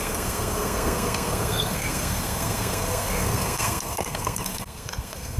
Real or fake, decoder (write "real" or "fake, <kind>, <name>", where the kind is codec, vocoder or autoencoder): fake, codec, SNAC